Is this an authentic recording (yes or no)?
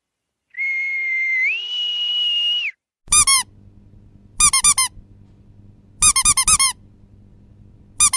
yes